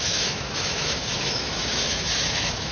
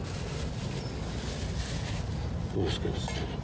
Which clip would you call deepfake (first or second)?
first